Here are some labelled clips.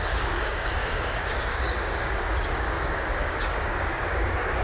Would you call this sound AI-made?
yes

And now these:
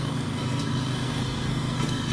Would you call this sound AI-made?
yes